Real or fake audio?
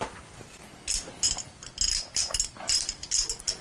real